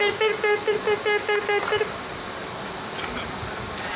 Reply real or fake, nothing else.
real